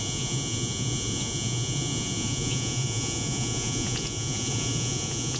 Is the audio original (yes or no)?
no